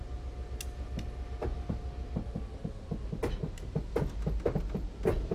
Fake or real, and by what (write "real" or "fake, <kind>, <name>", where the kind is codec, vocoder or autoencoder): real